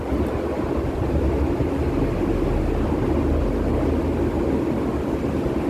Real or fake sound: real